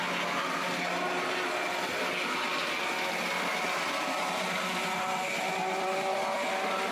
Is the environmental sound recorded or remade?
recorded